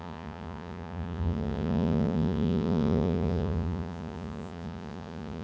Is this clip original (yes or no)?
no